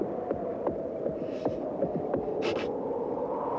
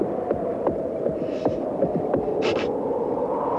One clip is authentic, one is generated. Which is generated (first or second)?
second